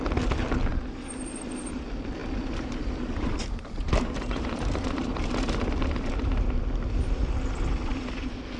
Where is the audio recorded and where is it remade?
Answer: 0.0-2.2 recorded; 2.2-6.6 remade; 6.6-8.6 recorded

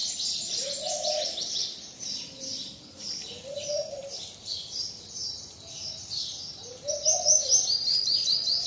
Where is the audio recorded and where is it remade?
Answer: 0.0-2.4 recorded; 2.4-8.7 remade

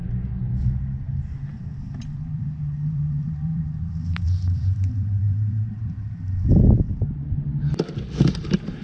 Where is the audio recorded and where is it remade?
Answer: 0.0-1.5 recorded; 1.5-6.2 remade; 6.2-8.8 recorded

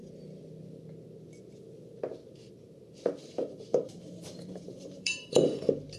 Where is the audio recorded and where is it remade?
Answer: 0.0-3.2 recorded; 3.2-5.6 remade; 5.6-6.0 recorded

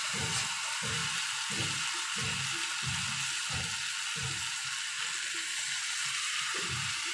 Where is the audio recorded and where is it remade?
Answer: 0.0-1.0 remade; 1.0-5.3 recorded; 5.3-7.1 remade

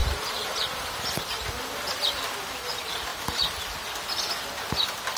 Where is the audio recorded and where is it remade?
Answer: 0.0-1.5 remade; 1.5-3.1 recorded; 3.1-3.6 remade; 3.6-5.2 recorded

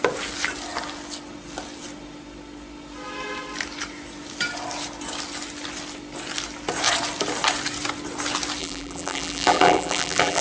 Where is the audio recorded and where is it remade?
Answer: 0.0-8.6 recorded; 8.6-10.4 remade